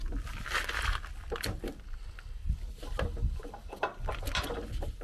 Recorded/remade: recorded